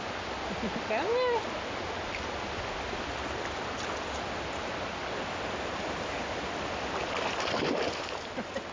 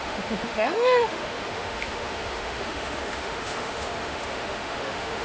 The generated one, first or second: second